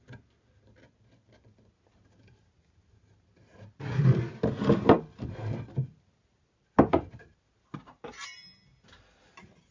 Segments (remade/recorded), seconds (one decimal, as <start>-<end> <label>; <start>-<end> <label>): 0.0-9.7 recorded